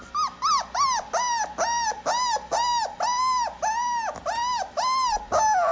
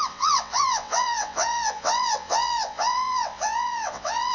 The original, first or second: first